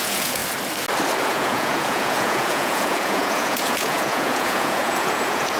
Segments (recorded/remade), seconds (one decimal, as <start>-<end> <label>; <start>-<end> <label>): 0.0-0.4 remade; 0.4-1.2 recorded; 1.2-5.6 remade